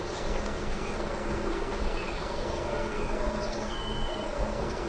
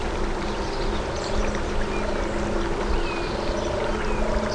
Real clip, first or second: second